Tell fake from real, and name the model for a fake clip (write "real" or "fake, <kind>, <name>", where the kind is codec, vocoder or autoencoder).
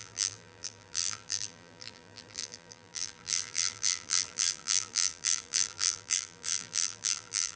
fake, vocoder, BigVGAN v2